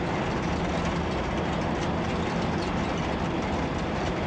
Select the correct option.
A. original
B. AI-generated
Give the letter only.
A